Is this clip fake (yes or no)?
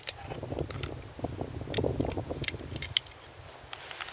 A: no